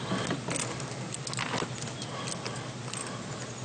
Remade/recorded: recorded